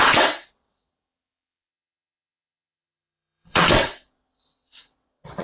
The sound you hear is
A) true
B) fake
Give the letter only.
B